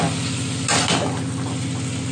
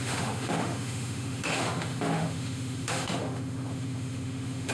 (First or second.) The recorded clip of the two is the first